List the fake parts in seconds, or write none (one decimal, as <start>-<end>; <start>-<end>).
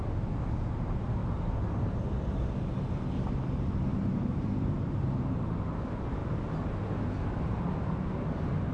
1.2-2.1; 3.9-5.8